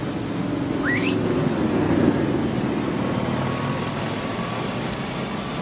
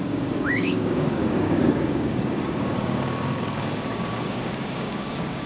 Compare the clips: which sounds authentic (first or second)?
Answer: first